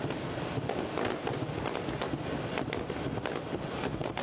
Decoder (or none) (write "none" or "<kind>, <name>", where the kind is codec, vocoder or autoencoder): none